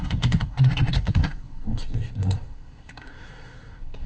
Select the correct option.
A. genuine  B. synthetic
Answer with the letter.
B